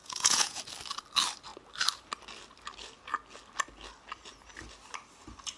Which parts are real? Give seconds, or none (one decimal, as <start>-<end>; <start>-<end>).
0.6-5.6